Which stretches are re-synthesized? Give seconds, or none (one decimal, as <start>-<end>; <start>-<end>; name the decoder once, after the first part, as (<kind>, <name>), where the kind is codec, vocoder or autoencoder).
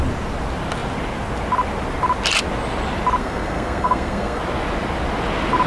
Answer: 3.2-4.4 (codec, SNAC)